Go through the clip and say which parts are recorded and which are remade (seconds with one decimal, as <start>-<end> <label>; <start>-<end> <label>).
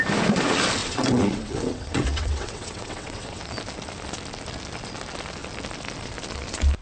0.0-0.8 recorded; 0.8-3.4 remade; 3.4-6.8 recorded